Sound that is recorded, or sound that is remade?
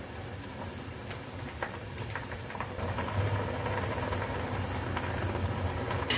recorded